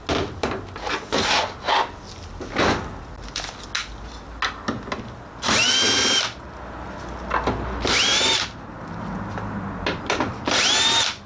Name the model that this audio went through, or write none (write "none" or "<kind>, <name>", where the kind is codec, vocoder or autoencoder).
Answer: none